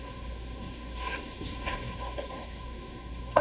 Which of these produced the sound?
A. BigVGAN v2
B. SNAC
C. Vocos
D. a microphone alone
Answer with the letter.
B